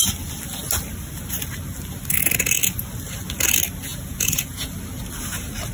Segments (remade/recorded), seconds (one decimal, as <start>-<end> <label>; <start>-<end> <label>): 0.0-3.9 recorded; 3.9-4.7 remade; 4.7-5.7 recorded